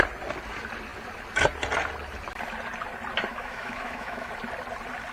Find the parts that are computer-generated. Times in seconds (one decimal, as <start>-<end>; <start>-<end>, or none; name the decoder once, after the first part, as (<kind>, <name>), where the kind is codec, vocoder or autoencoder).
3.3-4.3 (autoencoder, DAC-VAE)